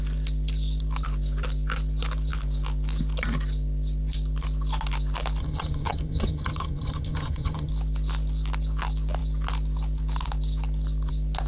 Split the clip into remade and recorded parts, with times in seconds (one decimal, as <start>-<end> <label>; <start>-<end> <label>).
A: 0.0-5.4 recorded; 5.4-7.7 remade; 7.7-11.5 recorded